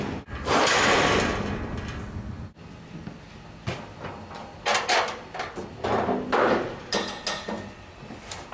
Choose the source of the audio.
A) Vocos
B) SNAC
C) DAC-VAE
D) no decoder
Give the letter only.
D